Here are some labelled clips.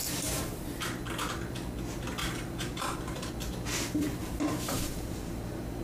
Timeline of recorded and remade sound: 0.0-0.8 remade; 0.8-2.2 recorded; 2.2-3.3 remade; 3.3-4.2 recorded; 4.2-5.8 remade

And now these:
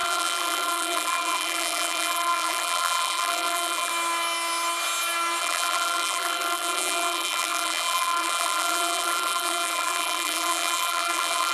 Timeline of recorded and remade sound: 0.0-3.9 remade; 3.9-5.4 recorded; 5.4-11.5 remade

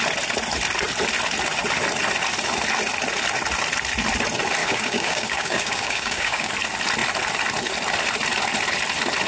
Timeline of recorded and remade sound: 0.0-4.6 recorded; 4.6-6.5 remade; 6.5-9.3 recorded

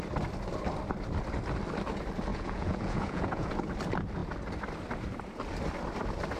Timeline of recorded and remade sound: 0.0-2.3 recorded; 2.3-3.5 remade; 3.5-6.4 recorded

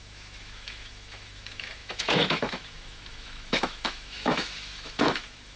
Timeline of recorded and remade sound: 0.0-5.6 remade

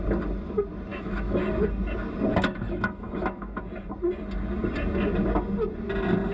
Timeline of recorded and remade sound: 0.0-0.9 recorded; 0.9-1.4 remade; 1.4-2.3 recorded; 2.3-3.6 remade; 3.6-6.3 recorded